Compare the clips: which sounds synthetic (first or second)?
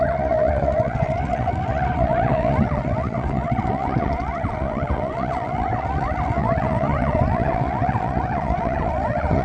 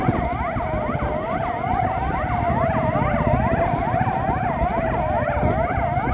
first